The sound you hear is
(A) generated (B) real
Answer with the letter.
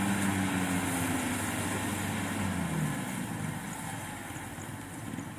B